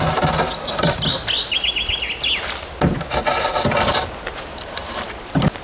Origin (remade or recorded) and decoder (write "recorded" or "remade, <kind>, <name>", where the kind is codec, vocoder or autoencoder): recorded